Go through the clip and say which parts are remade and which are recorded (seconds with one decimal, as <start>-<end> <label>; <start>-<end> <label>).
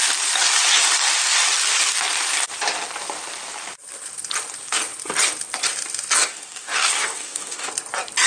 0.0-6.2 recorded; 6.2-7.7 remade; 7.7-8.3 recorded